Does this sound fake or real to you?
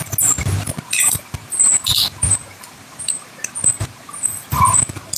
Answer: real